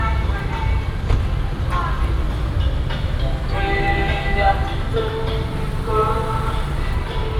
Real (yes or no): yes